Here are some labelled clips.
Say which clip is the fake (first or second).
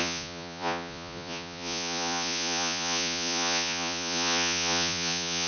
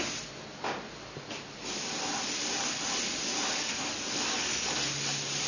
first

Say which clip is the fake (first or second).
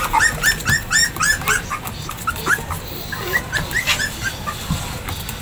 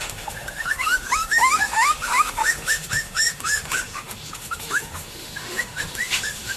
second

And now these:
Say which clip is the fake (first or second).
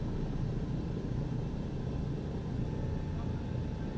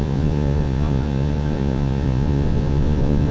second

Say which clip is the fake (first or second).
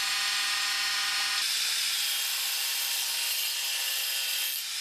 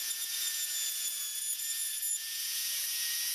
second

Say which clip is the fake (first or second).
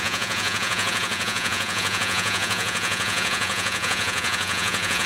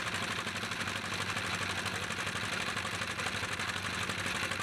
first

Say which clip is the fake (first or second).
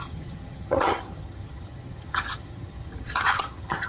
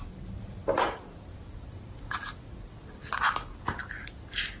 first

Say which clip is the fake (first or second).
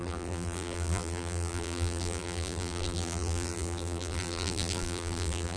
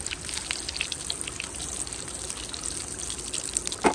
first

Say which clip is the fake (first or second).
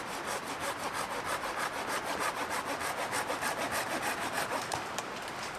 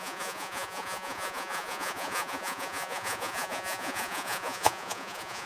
second